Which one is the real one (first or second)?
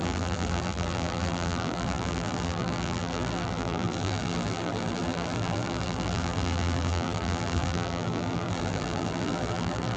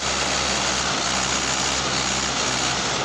second